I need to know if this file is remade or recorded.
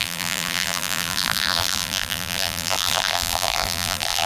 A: remade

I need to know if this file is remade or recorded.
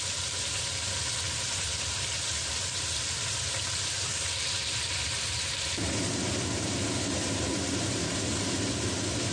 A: recorded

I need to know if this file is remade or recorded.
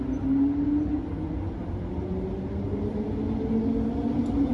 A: recorded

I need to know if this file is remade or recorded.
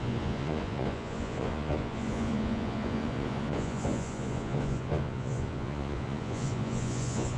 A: remade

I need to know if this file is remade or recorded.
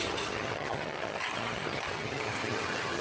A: remade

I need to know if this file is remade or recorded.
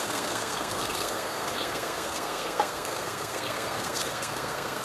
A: remade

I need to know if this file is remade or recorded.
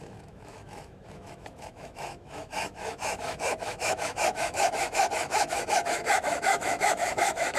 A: remade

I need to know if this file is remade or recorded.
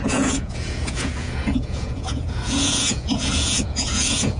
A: remade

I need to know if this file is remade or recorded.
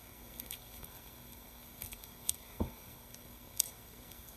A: remade